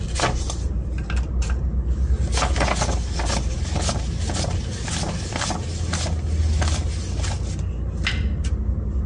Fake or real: real